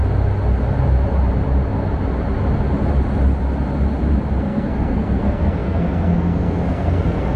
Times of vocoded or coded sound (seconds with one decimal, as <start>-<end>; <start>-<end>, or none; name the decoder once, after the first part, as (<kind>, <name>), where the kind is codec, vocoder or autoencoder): 4.4-7.4 (codec, SNAC)